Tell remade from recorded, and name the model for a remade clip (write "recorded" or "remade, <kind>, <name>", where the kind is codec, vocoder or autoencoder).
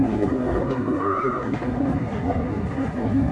remade, codec, SNAC